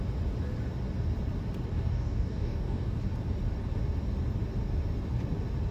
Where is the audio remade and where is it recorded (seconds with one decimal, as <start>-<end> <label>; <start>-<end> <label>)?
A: 0.0-1.7 recorded; 1.7-3.0 remade; 3.0-5.7 recorded